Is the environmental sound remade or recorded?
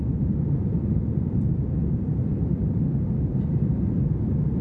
remade